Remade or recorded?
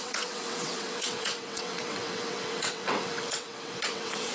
remade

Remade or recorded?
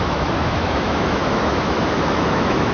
remade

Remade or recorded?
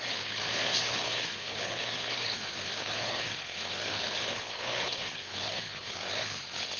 remade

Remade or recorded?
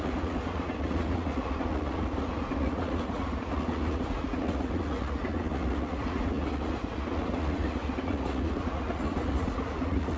remade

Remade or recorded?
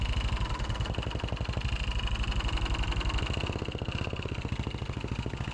recorded